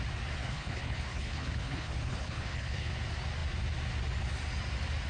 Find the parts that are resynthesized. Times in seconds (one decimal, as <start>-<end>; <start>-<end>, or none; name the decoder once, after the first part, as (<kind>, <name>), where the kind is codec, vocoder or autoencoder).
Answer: 0.4-2.9 (codec, HILCodec)